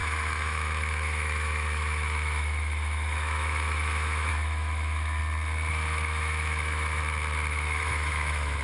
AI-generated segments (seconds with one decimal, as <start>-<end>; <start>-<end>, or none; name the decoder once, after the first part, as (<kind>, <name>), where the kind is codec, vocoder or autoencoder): 0.0-5.2 (autoencoder, DAC-VAE); 5.7-7.0; 7.5-8.6